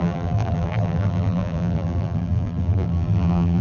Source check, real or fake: fake